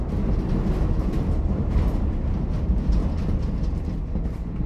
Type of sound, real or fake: real